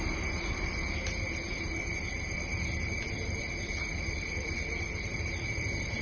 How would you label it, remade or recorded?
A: remade